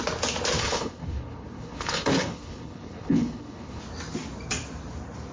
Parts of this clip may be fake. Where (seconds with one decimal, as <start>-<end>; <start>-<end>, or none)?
0.6-3.8